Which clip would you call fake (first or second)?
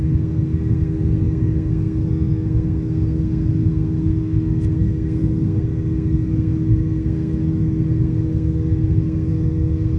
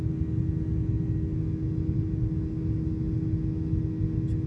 first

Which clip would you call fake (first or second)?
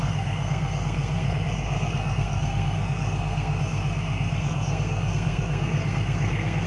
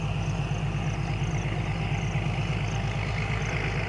first